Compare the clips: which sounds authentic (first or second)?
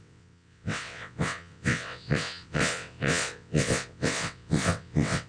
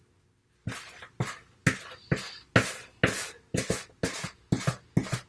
second